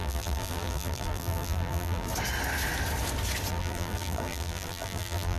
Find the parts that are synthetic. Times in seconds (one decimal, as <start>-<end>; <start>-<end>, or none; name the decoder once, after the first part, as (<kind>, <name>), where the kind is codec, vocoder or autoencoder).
0.0-2.1 (vocoder, BigVGAN v2); 3.5-5.4